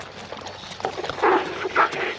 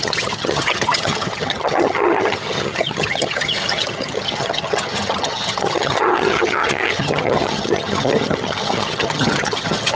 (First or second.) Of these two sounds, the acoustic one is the first